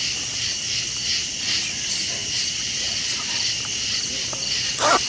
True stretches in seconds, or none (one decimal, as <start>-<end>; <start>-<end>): 0.0-5.1